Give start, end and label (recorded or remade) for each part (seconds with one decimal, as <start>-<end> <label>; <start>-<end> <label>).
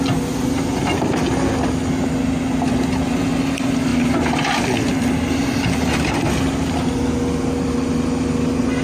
0.0-8.8 recorded